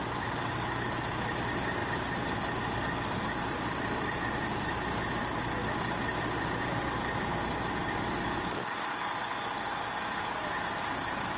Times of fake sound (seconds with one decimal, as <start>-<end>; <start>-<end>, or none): 1.8-2.3

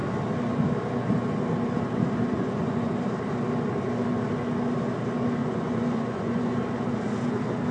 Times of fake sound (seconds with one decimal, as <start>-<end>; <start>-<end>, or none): 2.3-2.9; 5.4-6.6

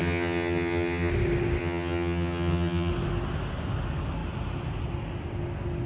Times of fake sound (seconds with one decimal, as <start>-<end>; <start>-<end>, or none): 0.0-1.1; 1.6-2.9

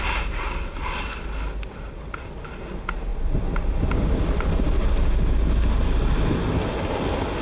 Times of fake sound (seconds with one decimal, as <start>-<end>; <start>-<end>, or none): none